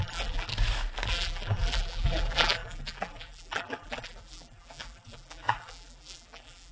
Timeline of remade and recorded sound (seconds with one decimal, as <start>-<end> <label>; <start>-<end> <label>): 0.0-0.5 remade; 0.5-1.1 recorded; 1.1-6.7 remade